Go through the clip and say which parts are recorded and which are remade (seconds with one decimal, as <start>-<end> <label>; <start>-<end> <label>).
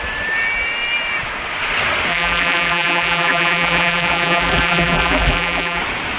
0.0-2.1 recorded; 2.1-5.8 remade; 5.8-6.2 recorded